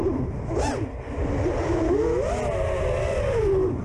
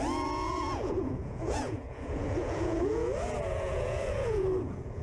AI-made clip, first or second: second